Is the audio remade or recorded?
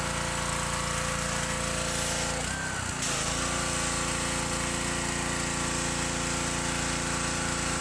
recorded